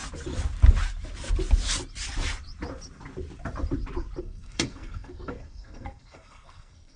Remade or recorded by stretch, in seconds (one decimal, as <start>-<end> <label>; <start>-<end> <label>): 0.0-4.2 recorded; 4.2-7.0 remade